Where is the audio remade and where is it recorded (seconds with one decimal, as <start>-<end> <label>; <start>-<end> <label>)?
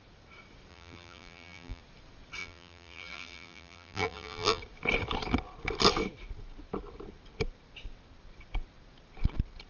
0.0-0.7 recorded; 0.7-1.8 remade; 1.8-2.4 recorded; 2.4-4.6 remade; 4.6-9.7 recorded